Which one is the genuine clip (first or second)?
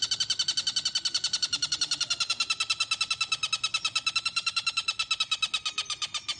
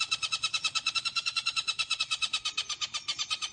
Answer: first